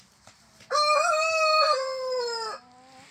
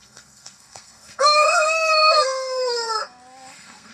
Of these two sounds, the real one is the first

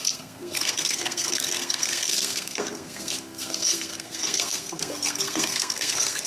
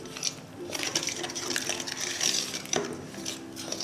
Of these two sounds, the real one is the second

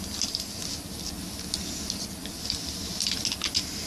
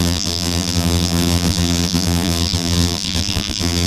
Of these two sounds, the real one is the first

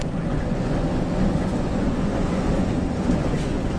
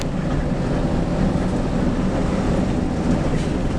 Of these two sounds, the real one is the second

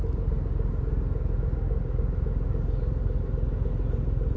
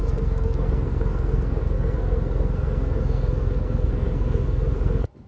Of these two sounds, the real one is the first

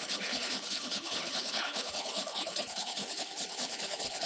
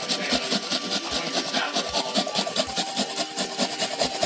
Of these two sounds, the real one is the second